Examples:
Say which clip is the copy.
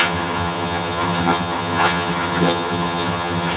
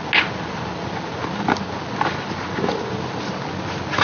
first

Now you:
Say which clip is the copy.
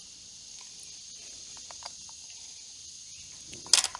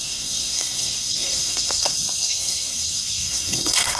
second